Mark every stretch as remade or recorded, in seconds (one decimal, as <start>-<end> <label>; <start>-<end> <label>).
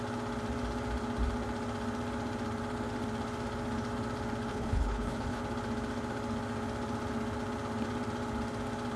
0.0-4.5 recorded; 4.5-5.4 remade; 5.4-9.0 recorded